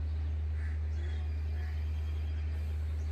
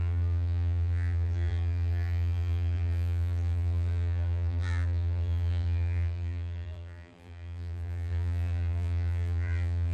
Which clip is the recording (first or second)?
first